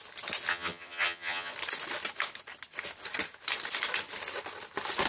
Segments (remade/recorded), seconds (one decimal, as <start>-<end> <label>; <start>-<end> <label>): 0.0-0.5 recorded; 0.5-1.5 remade; 1.5-5.1 recorded